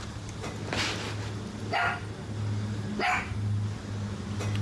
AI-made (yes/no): no